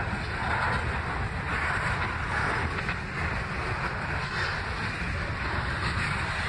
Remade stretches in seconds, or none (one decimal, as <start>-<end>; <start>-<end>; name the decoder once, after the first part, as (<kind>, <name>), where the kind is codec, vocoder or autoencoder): none